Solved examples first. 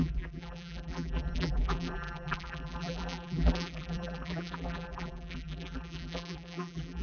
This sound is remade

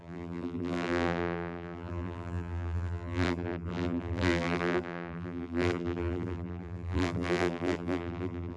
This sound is remade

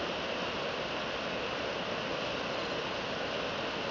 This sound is recorded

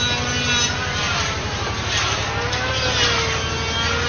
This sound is recorded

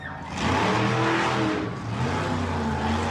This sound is recorded